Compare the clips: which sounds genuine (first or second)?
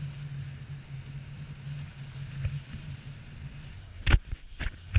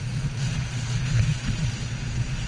first